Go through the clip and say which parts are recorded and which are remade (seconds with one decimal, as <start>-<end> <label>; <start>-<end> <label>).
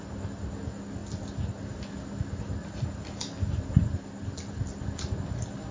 0.0-5.7 recorded